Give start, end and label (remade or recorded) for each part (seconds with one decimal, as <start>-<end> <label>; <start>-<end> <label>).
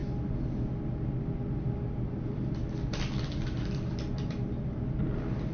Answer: 0.0-5.5 recorded